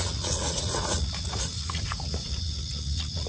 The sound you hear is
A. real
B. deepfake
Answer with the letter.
B